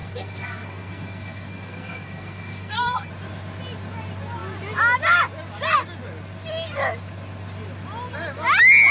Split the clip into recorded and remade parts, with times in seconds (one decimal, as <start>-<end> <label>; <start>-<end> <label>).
0.0-3.1 remade; 3.1-8.9 recorded